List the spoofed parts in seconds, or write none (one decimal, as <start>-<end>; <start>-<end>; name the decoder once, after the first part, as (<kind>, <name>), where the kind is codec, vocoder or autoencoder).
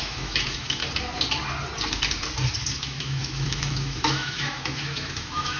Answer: 0.0-0.8 (autoencoder, DAC-VAE); 2.8-5.6